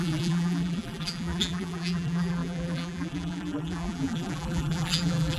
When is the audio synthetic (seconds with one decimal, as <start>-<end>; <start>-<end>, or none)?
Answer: 0.0-5.4